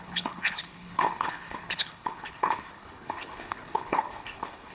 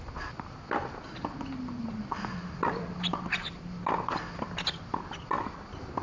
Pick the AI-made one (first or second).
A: first